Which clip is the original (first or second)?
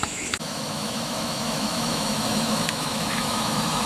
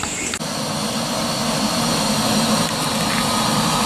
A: second